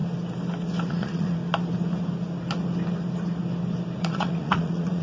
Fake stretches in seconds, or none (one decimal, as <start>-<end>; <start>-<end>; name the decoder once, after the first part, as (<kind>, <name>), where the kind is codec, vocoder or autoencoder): 0.9-1.4 (vocoder, Vocos); 4.0-5.0